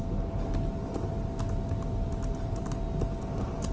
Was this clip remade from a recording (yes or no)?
no